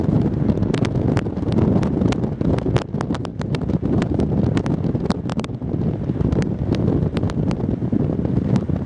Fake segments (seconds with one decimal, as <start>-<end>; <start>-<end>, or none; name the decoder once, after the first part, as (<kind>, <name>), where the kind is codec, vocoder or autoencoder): 3.3-4.2 (vocoder, BigVGAN v2); 5.3-6.5; 7.8-8.9